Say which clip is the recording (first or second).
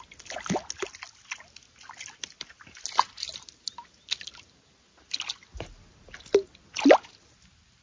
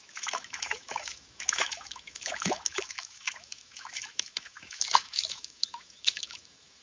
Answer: first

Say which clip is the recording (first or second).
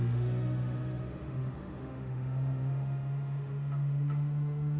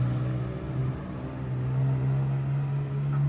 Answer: second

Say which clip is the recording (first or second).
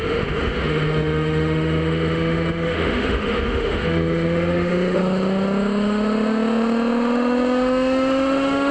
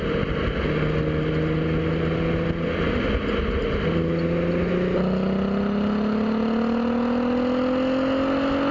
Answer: second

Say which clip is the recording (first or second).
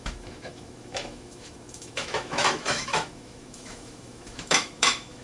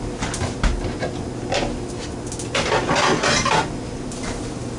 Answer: second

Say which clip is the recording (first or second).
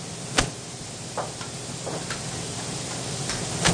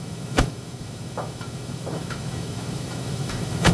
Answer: first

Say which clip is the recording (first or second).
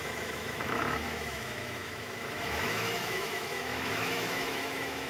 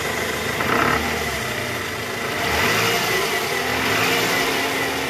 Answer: second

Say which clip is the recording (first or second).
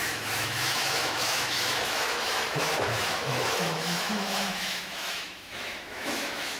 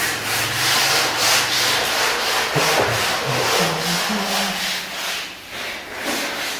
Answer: second